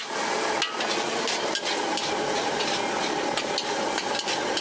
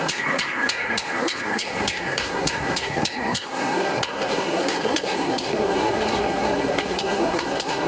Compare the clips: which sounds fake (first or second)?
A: second